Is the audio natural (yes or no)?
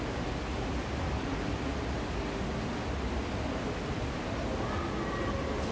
yes